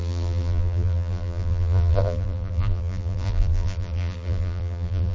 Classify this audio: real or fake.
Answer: fake